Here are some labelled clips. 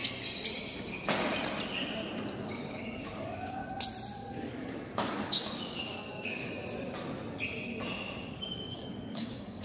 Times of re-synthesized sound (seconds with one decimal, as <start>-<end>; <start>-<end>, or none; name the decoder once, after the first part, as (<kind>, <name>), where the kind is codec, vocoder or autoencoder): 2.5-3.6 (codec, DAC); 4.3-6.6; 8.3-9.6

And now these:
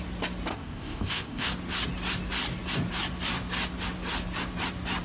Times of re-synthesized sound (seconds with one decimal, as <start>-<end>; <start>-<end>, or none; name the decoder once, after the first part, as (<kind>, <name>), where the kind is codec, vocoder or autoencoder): 0.5-1.5 (codec, ZipCodec)

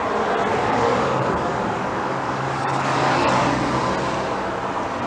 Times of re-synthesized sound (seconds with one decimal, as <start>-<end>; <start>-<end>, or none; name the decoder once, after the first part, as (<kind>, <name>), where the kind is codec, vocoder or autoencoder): 0.5-3.6 (codec, DAC)

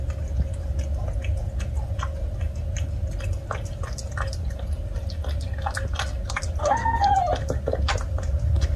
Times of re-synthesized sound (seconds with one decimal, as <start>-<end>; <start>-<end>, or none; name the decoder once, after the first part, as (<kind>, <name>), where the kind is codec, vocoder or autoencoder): 6.6-7.1 (codec, SNAC)

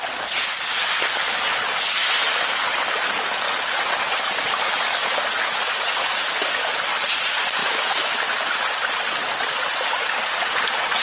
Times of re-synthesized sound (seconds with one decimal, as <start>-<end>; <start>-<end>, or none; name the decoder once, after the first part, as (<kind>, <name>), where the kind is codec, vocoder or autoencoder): 7.6-8.2 (autoencoder, DAC-VAE)

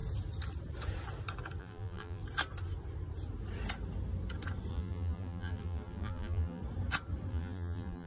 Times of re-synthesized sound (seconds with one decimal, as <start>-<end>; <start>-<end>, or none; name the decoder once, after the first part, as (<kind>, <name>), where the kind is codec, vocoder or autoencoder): 1.6-2.2 (vocoder, BigVGAN v2); 4.7-6.6; 7.3-8.1

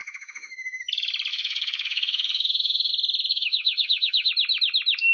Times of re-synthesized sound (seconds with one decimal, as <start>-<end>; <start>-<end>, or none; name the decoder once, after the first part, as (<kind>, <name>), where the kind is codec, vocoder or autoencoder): 0.0-0.8 (autoencoder, DAC-VAE); 1.3-2.9; 3.3-4.3